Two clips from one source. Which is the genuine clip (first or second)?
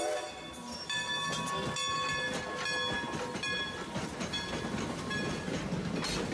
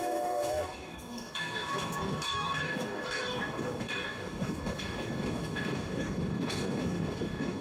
first